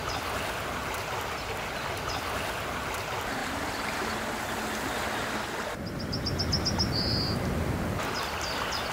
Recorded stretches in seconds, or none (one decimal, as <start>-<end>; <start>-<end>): 0.0-3.4; 4.0-8.9